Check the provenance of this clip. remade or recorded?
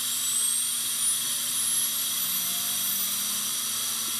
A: recorded